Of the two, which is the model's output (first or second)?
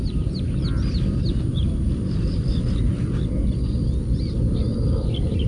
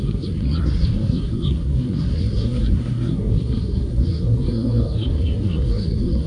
second